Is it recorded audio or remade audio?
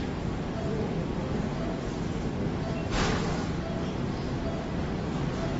recorded